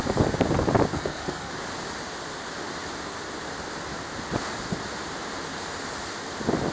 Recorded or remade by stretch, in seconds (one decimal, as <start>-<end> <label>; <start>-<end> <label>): 0.0-0.9 recorded; 0.9-1.5 remade; 1.5-6.7 recorded